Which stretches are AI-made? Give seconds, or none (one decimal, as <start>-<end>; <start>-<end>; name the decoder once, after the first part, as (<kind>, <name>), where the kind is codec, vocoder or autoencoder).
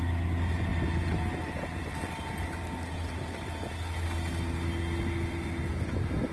none